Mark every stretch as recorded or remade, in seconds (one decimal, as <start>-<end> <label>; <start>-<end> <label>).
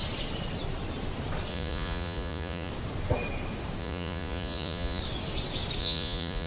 0.0-1.5 recorded; 1.5-2.7 remade; 2.7-3.8 recorded; 3.8-5.0 remade; 5.0-5.8 recorded; 5.8-6.5 remade